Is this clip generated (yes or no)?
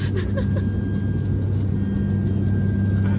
no